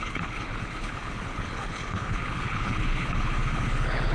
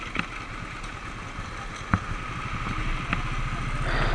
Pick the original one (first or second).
second